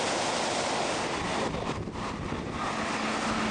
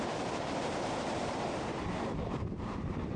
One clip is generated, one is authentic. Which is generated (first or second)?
second